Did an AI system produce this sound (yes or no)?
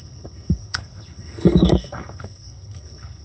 yes